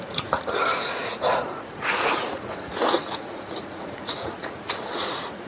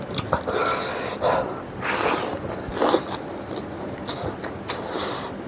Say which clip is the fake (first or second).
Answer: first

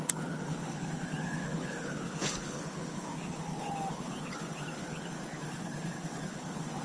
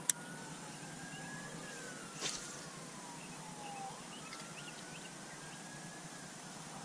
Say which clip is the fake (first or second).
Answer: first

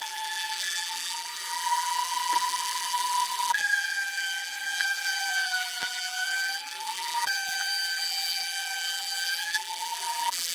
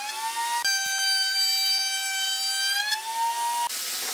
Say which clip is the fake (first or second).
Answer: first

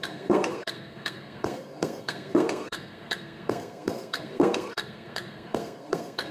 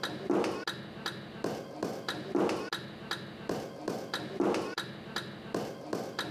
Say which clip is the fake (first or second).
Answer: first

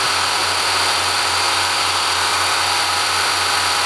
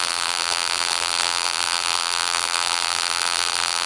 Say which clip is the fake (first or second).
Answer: second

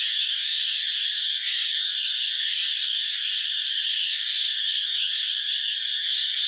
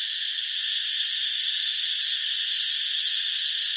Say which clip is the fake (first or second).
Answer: first